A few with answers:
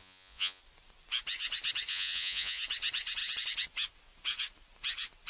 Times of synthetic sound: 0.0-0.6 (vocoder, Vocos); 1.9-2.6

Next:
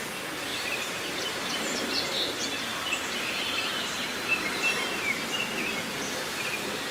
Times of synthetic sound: 0.5-2.0 (vocoder, BigVGAN v2); 2.7-5.1